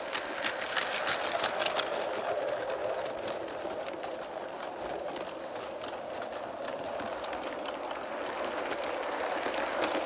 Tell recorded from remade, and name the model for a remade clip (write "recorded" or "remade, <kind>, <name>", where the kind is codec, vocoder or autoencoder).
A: recorded